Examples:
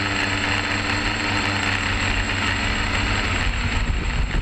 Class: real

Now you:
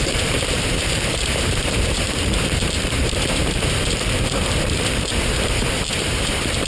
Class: fake